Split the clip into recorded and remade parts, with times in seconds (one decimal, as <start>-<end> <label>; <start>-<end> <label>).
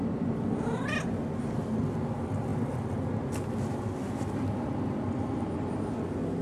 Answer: 0.0-6.4 recorded